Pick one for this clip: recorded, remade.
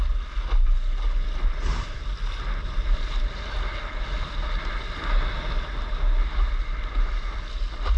recorded